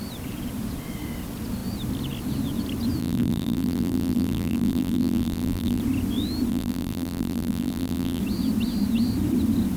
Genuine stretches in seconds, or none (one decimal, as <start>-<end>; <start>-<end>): 0.0-3.0; 5.8-6.5; 8.2-9.8